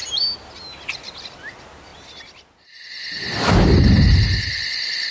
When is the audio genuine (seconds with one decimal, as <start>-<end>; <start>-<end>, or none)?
0.0-5.1